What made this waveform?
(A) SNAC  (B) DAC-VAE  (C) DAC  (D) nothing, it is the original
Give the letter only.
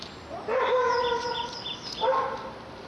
D